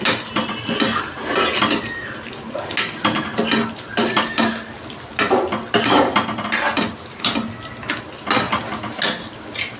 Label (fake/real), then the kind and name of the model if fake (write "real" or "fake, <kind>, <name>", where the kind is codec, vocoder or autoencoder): real